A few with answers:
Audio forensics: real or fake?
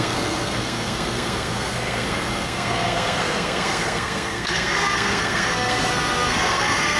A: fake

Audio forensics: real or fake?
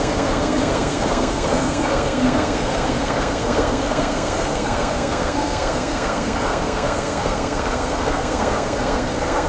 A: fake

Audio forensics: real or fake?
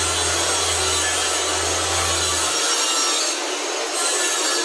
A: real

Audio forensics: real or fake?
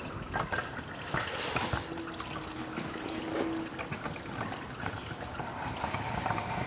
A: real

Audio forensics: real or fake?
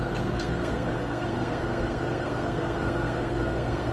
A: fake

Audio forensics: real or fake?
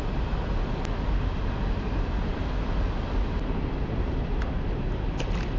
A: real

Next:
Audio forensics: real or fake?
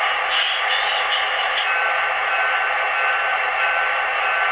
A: real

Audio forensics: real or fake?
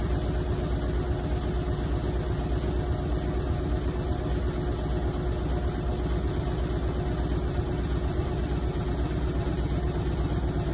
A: real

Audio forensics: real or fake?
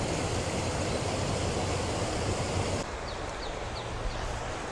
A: real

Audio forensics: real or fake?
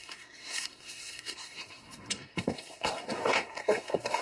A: fake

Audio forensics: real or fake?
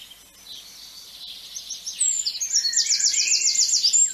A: real